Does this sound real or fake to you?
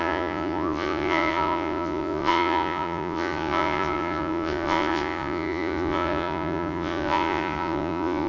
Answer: fake